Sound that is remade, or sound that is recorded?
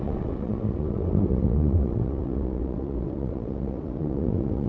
remade